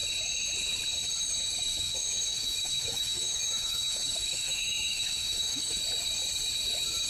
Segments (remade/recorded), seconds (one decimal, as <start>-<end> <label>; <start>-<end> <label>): 0.0-1.7 recorded; 1.7-5.8 remade; 5.8-7.1 recorded